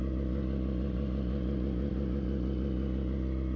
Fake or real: real